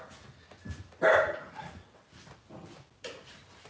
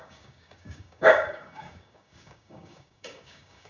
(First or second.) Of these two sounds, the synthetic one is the second